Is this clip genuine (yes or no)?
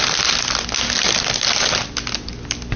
yes